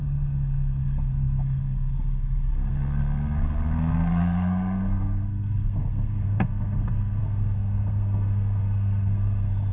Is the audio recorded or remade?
remade